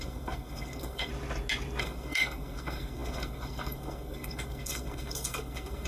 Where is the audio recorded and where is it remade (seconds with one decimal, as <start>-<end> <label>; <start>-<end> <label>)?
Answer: 0.0-1.1 remade; 1.1-1.8 recorded; 1.8-5.9 remade